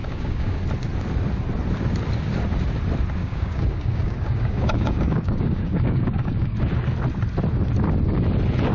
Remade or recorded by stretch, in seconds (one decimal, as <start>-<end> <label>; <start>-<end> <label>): 0.0-0.6 remade; 0.6-3.2 recorded; 3.2-6.7 remade; 6.7-8.7 recorded